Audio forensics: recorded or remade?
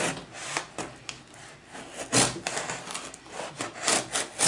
recorded